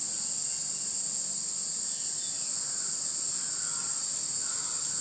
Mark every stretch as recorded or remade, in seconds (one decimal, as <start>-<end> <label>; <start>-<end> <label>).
0.0-5.0 recorded